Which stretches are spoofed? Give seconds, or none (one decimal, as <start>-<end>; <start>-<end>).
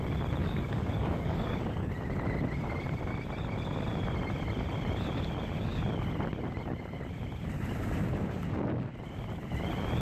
0.4-1.9